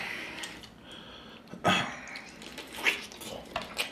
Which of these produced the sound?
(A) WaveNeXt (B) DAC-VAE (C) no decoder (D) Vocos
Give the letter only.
C